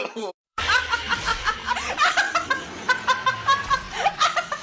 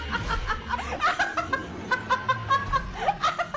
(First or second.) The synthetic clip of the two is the first